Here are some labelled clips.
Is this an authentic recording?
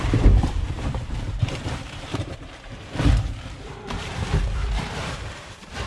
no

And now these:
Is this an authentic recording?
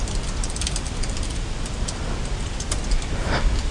yes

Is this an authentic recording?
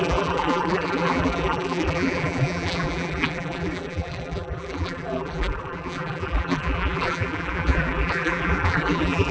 no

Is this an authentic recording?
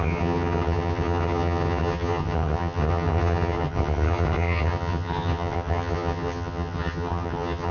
no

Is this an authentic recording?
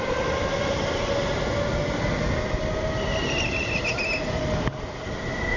yes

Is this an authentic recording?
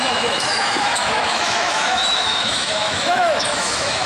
no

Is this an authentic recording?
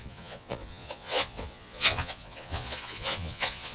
no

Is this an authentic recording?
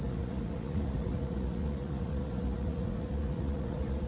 no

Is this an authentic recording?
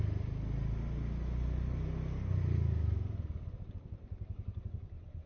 yes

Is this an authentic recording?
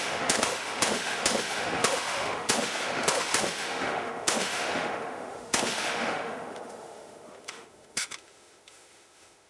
no